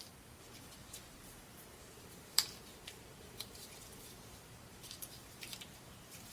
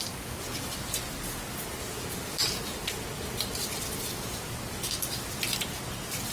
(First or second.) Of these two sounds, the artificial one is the first